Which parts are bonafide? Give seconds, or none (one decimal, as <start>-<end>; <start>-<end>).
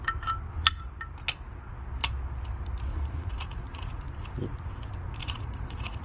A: 0.0-2.9; 4.0-5.2